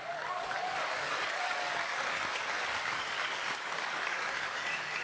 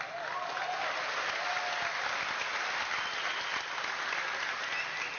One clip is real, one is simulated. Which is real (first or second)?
second